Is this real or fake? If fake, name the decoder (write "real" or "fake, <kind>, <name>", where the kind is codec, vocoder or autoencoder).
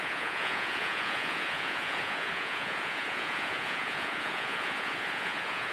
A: fake, vocoder, Vocos